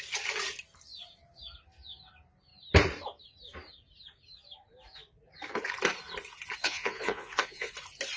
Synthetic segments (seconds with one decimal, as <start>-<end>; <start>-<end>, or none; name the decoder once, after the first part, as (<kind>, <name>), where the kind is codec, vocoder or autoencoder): 6.6-7.7 (vocoder, Vocos)